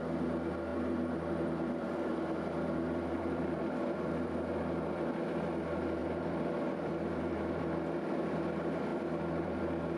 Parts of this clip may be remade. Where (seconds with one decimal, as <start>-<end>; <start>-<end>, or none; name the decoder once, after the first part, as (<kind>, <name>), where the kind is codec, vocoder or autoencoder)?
0.7-5.1 (vocoder, BigVGAN v2); 6.0-7.6; 8.9-9.6